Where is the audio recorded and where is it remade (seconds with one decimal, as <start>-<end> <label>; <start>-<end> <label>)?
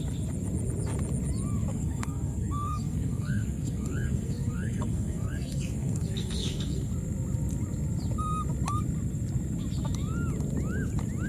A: 0.0-1.7 recorded; 1.7-6.9 remade; 6.9-11.3 recorded